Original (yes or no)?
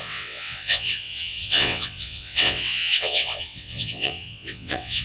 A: no